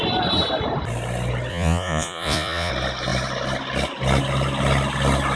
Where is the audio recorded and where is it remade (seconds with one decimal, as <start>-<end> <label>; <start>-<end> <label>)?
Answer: 0.0-1.5 recorded; 1.5-2.7 remade; 2.7-5.4 recorded

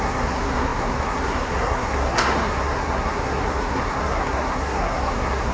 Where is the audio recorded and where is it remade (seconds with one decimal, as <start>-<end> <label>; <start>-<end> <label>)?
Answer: 0.0-5.5 remade

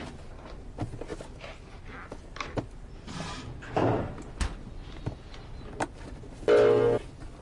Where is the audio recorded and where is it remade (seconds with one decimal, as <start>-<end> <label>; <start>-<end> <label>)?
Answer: 0.0-7.4 recorded

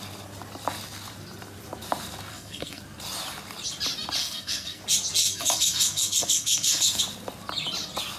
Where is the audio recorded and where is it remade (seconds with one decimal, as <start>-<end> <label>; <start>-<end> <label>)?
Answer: 0.0-2.3 recorded; 2.3-2.8 remade; 2.8-4.2 recorded; 4.2-4.8 remade; 4.8-5.2 recorded; 5.2-7.0 remade; 7.0-8.2 recorded

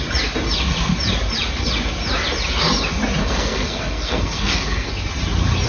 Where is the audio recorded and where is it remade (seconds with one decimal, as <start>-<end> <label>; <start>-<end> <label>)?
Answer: 0.0-3.2 recorded; 3.2-4.9 remade; 4.9-5.7 recorded